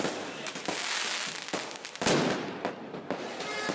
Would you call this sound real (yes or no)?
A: yes